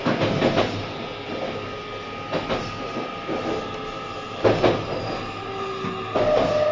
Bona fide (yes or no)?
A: yes